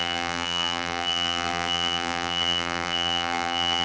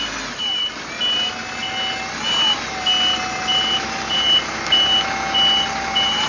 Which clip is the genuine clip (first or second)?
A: second